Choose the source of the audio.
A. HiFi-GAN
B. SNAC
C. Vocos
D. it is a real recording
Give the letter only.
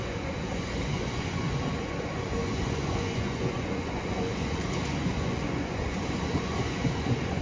C